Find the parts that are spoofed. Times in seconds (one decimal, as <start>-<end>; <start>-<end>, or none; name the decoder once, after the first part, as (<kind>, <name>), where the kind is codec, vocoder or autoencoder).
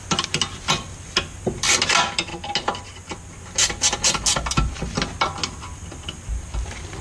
none